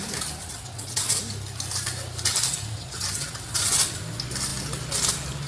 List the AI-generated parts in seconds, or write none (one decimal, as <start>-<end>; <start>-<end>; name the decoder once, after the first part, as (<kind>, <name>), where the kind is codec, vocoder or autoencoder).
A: 0.4-1.2 (vocoder, WaveNeXt); 2.7-3.8